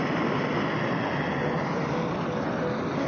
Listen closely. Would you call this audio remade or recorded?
recorded